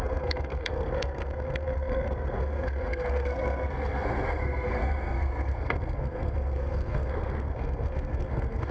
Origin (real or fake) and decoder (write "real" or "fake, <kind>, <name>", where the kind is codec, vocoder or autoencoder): fake, codec, SNAC